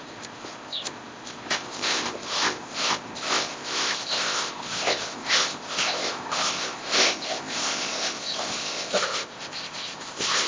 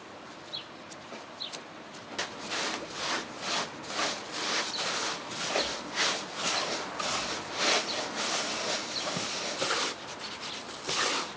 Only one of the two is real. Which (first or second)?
second